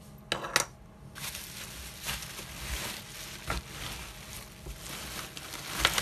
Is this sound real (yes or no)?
yes